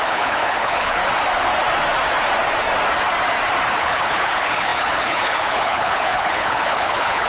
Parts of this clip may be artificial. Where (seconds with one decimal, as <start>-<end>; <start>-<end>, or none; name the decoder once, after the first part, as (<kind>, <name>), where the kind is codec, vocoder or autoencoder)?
0.0-1.0 (codec, HILCodec); 3.8-7.3